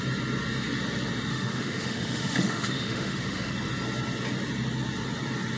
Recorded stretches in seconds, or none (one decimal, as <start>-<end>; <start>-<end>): 0.0-1.3; 3.5-5.6

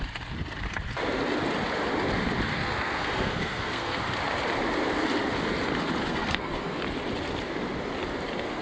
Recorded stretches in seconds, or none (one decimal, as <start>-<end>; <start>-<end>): 0.0-2.5; 4.0-6.1; 6.8-8.6

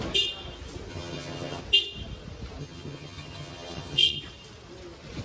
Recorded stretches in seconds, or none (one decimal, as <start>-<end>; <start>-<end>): 0.0-0.9; 1.6-2.6; 4.2-5.2

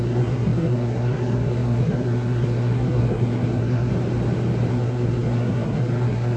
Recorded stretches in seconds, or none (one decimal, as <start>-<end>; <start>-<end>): 3.9-4.7

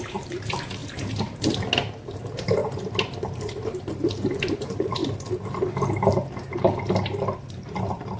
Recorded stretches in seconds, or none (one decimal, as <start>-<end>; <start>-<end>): 0.8-1.9; 2.6-3.3; 5.0-7.5

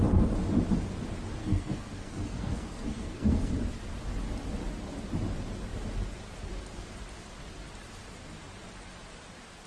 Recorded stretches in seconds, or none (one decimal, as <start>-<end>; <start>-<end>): 0.0-1.4; 3.5-9.7

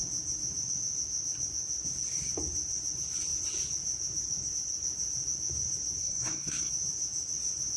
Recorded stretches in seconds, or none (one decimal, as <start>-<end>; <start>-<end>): 0.0-6.0; 6.7-7.8

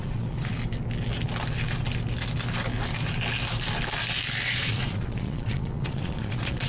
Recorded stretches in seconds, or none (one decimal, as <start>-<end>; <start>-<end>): 0.5-4.5